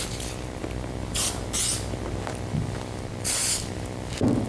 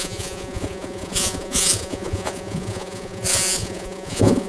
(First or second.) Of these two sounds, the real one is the first